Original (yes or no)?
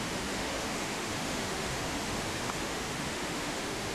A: no